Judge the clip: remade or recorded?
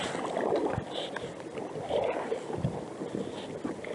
recorded